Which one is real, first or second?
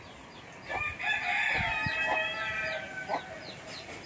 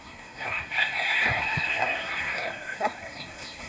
first